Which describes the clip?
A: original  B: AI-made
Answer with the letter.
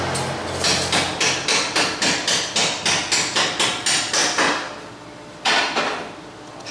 A